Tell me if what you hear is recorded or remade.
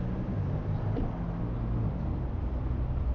recorded